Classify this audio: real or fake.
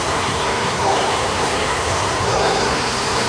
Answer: fake